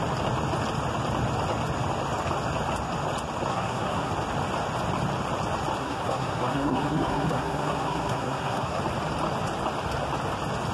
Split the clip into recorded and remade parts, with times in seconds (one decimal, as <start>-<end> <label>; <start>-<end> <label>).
0.0-3.5 recorded; 3.5-4.1 remade; 4.1-5.8 recorded; 5.8-8.8 remade; 8.8-10.7 recorded